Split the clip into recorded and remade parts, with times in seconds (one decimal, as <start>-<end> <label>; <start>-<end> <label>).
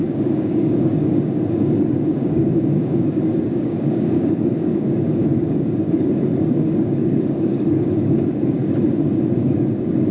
0.0-8.6 remade; 8.6-9.4 recorded; 9.4-10.1 remade